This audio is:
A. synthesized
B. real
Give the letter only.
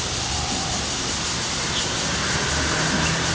B